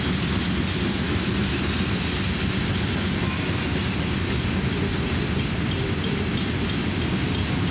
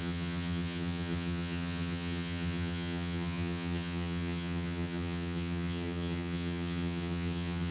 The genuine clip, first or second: first